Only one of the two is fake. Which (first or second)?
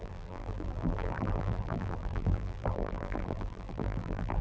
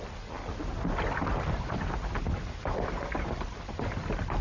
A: first